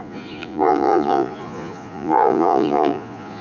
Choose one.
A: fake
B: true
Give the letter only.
A